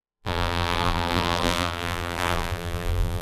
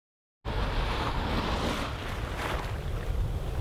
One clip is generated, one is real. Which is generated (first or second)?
first